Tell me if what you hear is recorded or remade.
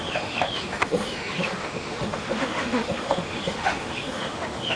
remade